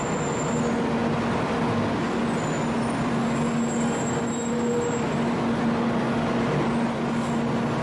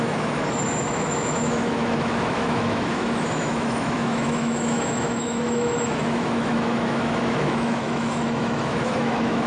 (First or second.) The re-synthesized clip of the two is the second